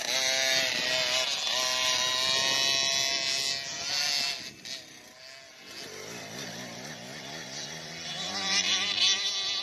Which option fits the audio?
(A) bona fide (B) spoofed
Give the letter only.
A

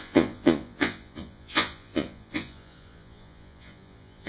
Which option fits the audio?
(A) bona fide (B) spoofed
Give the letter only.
B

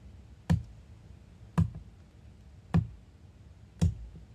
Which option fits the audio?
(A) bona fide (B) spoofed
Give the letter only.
A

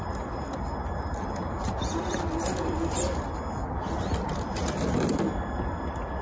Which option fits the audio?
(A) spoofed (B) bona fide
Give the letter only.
B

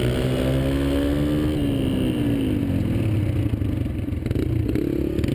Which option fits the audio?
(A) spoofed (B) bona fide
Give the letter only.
B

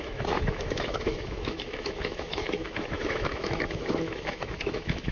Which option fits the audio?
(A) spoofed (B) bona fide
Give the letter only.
A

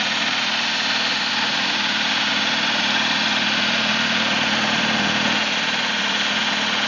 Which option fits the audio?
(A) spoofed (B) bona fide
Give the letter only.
A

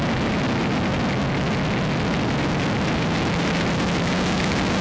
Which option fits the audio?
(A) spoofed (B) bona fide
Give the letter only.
B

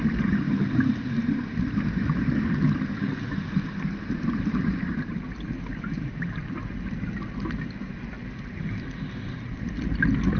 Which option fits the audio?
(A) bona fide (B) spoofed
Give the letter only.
A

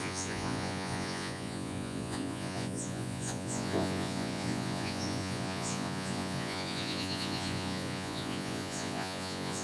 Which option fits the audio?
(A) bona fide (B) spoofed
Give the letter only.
B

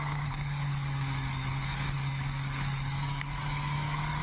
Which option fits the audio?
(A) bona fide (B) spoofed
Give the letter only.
B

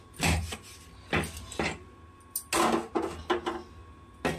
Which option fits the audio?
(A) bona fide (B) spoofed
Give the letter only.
A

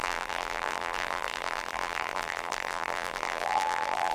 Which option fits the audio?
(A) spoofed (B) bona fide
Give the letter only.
A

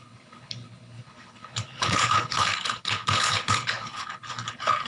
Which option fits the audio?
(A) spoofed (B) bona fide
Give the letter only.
A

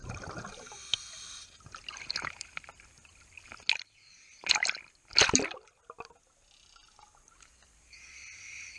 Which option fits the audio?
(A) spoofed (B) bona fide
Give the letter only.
B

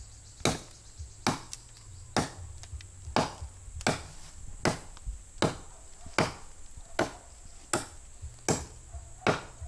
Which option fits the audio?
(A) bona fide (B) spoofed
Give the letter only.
A